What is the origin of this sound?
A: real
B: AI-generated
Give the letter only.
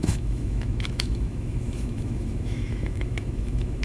B